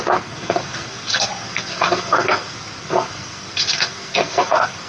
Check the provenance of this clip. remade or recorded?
remade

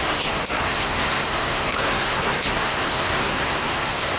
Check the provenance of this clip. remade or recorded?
remade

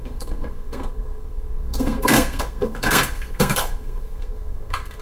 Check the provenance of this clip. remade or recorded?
remade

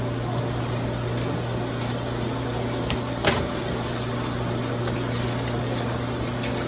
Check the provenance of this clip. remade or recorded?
recorded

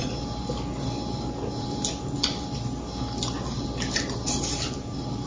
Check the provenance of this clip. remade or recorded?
recorded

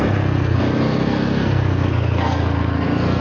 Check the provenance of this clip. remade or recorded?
remade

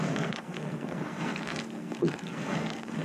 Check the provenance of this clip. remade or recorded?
remade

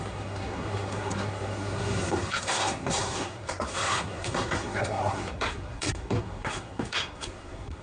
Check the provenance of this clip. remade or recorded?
remade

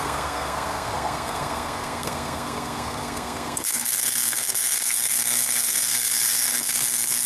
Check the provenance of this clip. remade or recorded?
remade